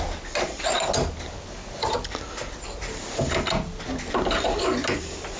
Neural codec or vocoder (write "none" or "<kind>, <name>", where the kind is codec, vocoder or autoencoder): none